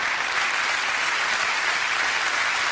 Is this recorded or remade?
recorded